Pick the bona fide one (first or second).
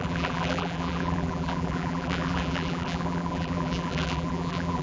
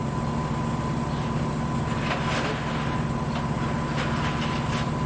second